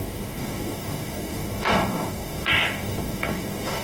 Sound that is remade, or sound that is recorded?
remade